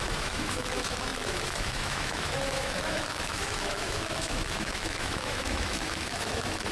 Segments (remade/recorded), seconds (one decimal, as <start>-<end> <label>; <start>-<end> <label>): 0.0-6.7 remade